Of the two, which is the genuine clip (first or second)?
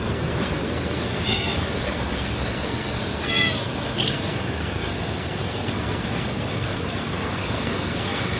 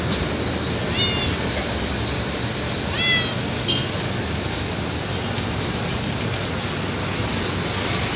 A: second